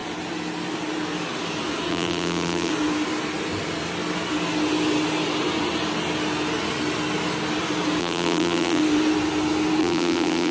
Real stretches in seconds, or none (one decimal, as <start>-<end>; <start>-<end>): 0.0-1.9; 2.7-8.0; 8.8-9.8